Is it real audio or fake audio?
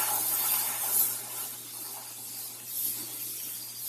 real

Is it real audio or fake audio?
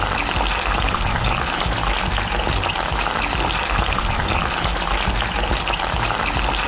real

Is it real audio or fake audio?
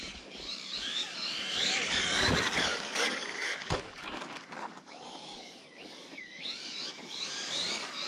fake